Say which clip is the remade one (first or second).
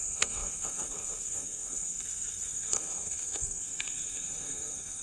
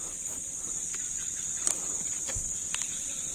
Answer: first